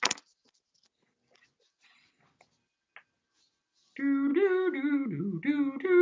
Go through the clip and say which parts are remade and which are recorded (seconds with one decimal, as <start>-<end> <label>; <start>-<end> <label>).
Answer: 0.0-4.3 recorded; 4.3-5.2 remade; 5.2-6.0 recorded